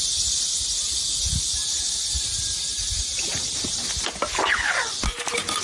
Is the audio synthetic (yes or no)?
no